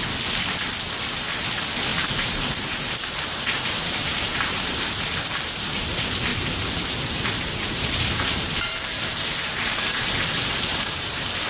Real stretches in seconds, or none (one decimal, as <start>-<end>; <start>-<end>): 0.0-1.9; 4.8-6.3